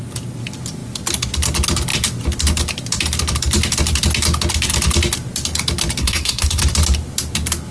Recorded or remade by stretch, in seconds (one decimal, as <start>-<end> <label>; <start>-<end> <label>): 0.0-6.0 recorded; 6.0-6.6 remade; 6.6-7.7 recorded